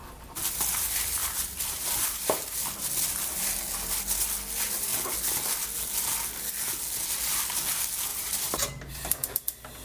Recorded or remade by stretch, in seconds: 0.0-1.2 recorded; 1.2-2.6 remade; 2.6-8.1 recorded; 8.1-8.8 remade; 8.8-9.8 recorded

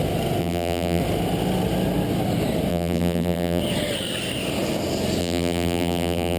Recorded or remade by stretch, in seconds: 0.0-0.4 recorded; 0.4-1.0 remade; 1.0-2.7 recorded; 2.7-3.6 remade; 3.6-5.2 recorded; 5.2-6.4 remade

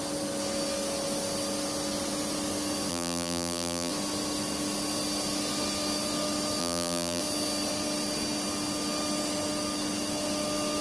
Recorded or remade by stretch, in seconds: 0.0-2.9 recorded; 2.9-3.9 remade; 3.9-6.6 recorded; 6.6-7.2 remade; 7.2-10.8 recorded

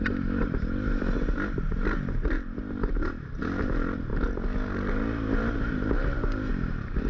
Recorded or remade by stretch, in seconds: 0.0-4.1 remade; 4.1-6.5 recorded; 6.5-7.1 remade